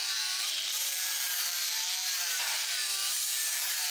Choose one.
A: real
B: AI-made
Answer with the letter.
B